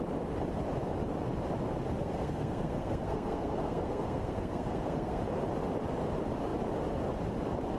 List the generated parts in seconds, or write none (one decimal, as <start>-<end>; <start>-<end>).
2.0-5.2